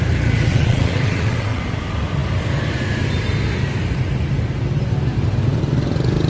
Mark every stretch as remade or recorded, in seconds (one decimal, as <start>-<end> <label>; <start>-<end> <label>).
0.0-0.5 recorded; 0.5-1.6 remade; 1.6-6.3 recorded